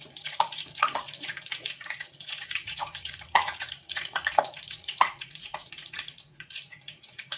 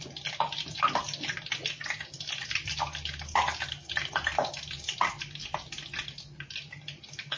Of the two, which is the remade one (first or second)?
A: first